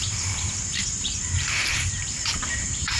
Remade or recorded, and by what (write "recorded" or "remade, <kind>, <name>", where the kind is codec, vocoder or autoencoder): remade, vocoder, BigVGAN v2